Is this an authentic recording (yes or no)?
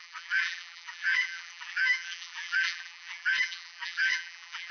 no